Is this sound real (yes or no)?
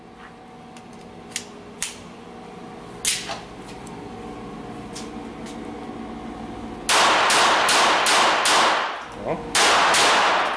yes